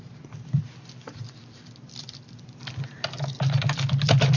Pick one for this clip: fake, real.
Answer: fake